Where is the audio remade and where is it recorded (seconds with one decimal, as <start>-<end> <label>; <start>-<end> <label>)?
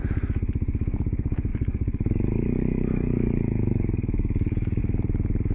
0.0-1.5 recorded; 1.5-4.8 remade; 4.8-5.5 recorded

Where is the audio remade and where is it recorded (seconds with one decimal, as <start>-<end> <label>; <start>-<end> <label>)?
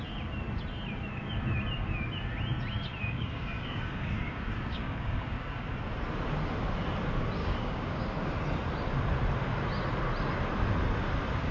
0.0-3.0 recorded; 3.0-5.7 remade; 5.7-7.4 recorded; 7.4-8.0 remade; 8.0-11.5 recorded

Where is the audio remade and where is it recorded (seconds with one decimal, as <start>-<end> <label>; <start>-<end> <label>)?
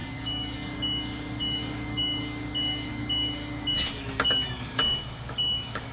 0.0-5.9 remade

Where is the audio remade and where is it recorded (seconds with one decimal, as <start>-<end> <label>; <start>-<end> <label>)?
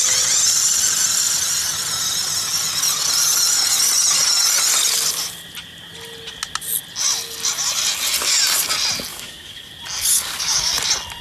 0.0-9.1 recorded; 9.1-9.7 remade; 9.7-10.1 recorded; 10.1-10.7 remade; 10.7-11.2 recorded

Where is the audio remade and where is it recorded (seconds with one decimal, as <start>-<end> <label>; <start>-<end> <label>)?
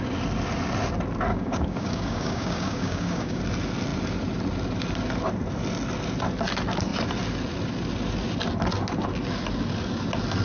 0.0-1.3 recorded; 1.3-3.4 remade; 3.4-10.4 recorded